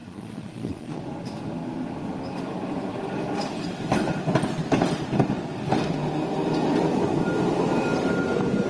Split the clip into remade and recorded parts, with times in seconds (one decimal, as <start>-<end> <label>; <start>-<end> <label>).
0.0-1.0 remade; 1.0-8.7 recorded